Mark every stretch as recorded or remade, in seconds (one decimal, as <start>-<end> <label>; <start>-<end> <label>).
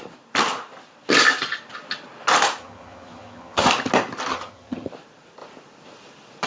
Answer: 0.0-2.6 recorded; 2.6-3.7 remade; 3.7-4.3 recorded; 4.3-4.9 remade; 4.9-6.5 recorded